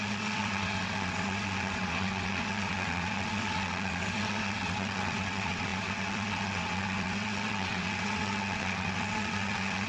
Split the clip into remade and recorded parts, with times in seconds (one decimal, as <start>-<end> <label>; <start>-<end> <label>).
0.0-9.9 remade